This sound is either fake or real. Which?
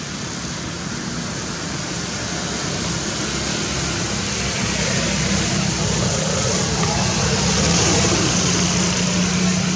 real